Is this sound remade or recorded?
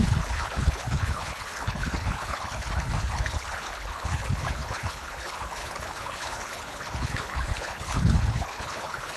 remade